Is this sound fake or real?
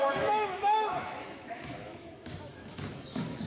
fake